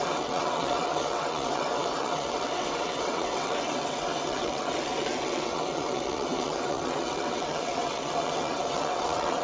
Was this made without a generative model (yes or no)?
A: no